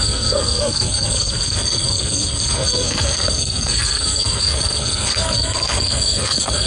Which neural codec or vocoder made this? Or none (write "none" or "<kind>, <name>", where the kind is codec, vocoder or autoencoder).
codec, SNAC